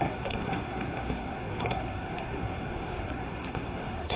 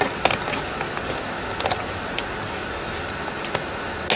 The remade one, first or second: first